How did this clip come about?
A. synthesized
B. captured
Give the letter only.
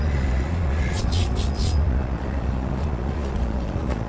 A